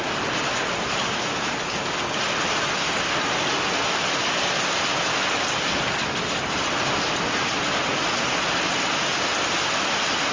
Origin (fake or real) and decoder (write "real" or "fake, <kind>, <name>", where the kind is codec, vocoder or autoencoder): real